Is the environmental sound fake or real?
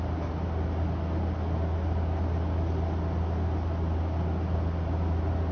real